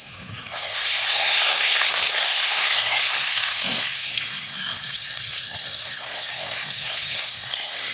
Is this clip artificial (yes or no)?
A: yes